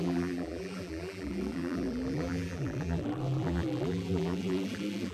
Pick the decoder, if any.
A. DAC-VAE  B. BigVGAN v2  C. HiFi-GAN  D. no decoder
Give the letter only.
B